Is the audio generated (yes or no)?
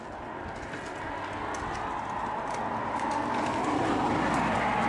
no